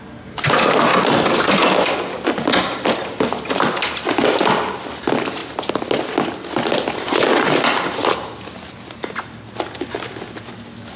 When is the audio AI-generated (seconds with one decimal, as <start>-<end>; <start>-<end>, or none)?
0.9-1.6